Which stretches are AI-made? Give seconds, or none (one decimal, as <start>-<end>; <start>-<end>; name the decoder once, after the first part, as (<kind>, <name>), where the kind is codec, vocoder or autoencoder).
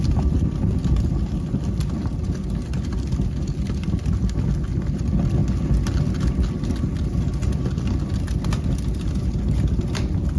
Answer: none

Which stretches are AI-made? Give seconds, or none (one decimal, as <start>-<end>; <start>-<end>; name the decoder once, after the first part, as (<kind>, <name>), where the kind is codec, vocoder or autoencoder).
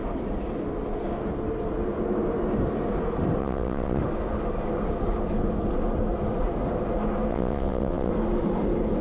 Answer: 3.4-4.0 (vocoder, WaveNeXt); 7.3-8.1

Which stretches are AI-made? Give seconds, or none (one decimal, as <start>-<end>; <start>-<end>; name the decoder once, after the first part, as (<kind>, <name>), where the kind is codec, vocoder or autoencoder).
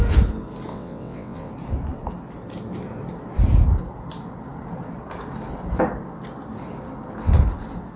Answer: 0.7-1.5 (vocoder, WaveNeXt)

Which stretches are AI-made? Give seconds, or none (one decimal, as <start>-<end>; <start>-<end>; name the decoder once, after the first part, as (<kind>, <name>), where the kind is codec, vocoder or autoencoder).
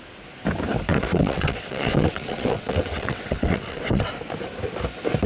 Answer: 0.9-4.1 (vocoder, WaveNeXt)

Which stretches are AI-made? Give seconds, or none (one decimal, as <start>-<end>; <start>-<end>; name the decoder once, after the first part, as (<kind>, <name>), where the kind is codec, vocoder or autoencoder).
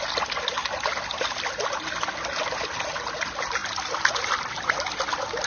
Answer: none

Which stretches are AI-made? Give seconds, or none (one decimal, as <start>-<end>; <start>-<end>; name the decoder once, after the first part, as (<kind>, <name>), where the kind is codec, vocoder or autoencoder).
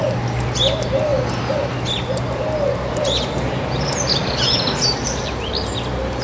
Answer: none